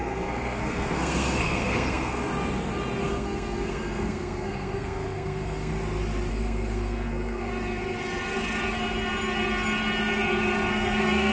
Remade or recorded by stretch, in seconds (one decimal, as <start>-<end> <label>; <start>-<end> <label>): 0.0-2.3 remade; 2.3-3.0 recorded; 3.0-5.7 remade; 5.7-6.3 recorded; 6.3-7.5 remade; 7.5-10.7 recorded; 10.7-11.3 remade